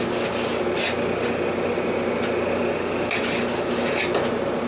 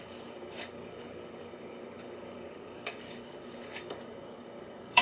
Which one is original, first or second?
first